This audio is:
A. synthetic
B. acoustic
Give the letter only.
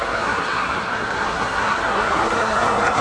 A